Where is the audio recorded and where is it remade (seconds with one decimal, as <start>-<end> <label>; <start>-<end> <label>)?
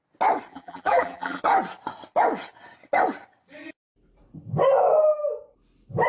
0.0-0.5 recorded; 0.5-1.4 remade; 1.4-6.1 recorded